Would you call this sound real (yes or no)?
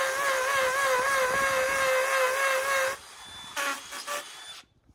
yes